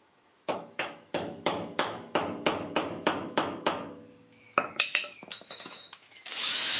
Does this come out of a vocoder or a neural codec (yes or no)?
yes